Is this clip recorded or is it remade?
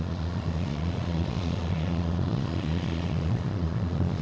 remade